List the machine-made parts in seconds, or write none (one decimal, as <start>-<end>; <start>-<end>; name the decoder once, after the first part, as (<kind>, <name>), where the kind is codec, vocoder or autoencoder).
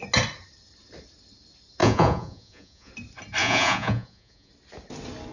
1.8-2.9 (vocoder, Vocos); 3.4-4.5